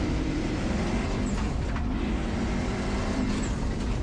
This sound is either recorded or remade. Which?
remade